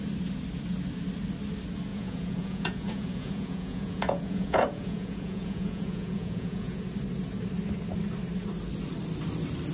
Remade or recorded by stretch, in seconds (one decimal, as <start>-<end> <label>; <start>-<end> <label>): 0.0-1.9 recorded; 1.9-6.8 remade; 6.8-9.7 recorded